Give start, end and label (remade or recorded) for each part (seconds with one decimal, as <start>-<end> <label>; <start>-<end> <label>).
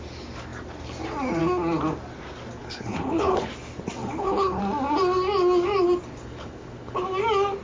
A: 0.0-2.6 recorded; 2.6-3.5 remade; 3.5-4.0 recorded; 4.0-4.6 remade; 4.6-6.2 recorded; 6.2-7.0 remade; 7.0-7.6 recorded